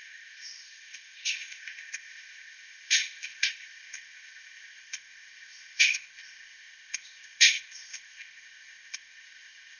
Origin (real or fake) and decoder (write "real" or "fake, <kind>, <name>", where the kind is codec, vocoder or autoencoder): fake, codec, ZipCodec